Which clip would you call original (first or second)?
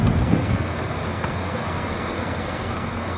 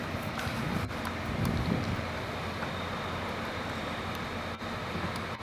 second